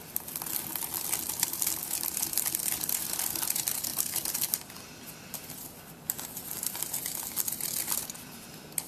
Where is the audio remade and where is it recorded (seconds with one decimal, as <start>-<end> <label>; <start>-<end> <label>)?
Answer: 0.0-8.9 recorded